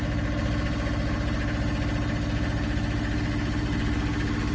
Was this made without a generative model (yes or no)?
yes